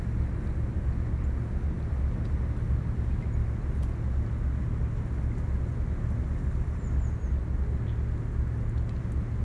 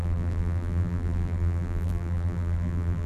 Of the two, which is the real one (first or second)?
first